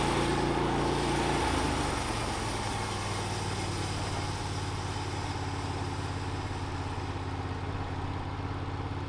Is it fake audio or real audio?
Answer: real